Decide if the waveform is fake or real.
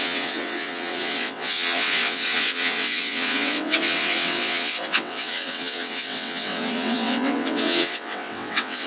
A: fake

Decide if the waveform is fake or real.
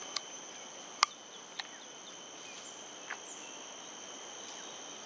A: real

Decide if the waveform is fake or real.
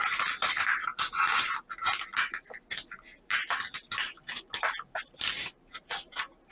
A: real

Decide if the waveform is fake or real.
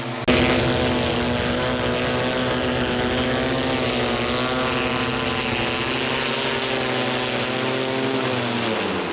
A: real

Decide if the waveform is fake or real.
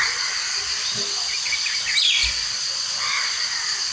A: real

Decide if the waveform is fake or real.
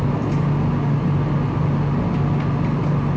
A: real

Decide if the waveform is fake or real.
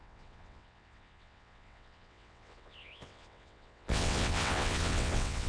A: fake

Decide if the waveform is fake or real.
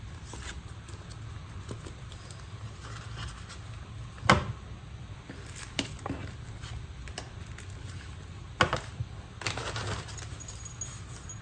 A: real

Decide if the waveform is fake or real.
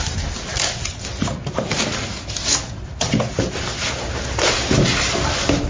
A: real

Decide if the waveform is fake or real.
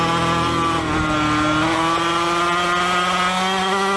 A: real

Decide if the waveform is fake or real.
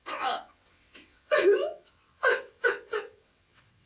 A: fake